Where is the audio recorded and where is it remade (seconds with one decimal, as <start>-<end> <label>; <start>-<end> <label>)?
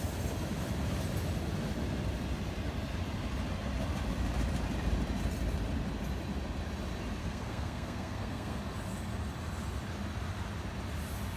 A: 0.0-7.2 recorded; 7.2-8.6 remade; 8.6-11.4 recorded